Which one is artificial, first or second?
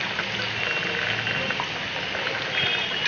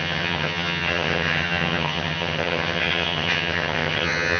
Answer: second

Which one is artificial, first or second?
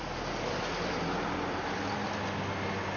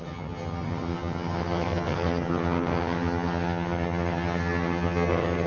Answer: second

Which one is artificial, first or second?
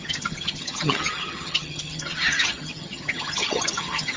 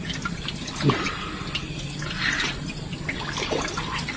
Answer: first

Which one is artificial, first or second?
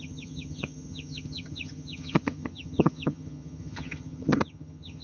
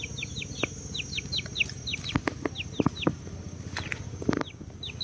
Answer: first